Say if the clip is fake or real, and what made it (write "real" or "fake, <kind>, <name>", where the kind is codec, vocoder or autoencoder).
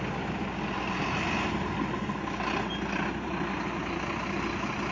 real